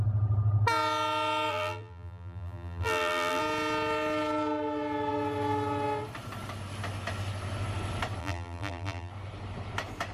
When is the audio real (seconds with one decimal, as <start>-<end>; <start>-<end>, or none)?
0.0-1.5; 3.4-8.2; 9.1-10.1